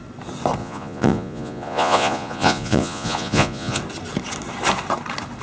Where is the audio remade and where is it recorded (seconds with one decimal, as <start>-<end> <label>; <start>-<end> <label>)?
0.0-0.6 recorded; 0.6-3.8 remade; 3.8-5.4 recorded